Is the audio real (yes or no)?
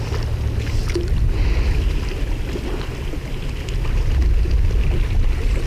yes